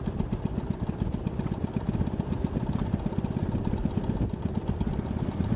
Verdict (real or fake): real